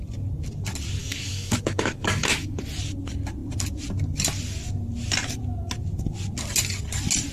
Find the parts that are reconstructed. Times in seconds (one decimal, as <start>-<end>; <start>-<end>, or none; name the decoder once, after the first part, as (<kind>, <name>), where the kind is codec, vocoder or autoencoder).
1.0-2.6 (codec, DAC)